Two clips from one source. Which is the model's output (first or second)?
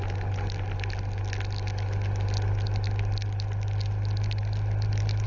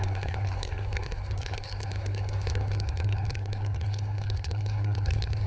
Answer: second